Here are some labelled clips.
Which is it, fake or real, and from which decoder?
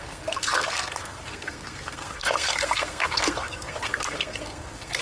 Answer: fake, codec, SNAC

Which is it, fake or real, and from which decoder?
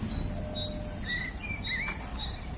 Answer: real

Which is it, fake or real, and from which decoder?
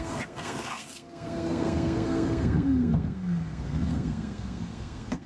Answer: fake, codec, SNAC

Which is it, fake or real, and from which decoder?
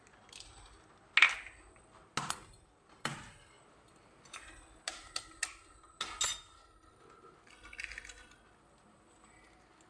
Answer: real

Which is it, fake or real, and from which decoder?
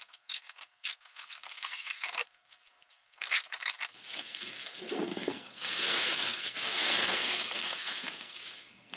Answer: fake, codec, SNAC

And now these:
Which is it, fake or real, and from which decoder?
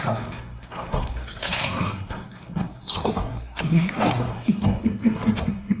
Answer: fake, codec, SNAC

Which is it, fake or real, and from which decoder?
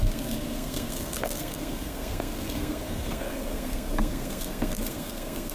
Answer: fake, codec, SNAC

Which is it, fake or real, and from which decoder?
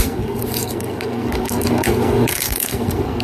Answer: fake, codec, SNAC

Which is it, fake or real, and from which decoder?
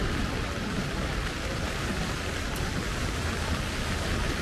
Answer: real